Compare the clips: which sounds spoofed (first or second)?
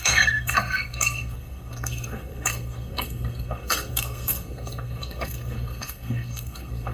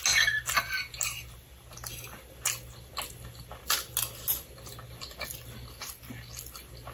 first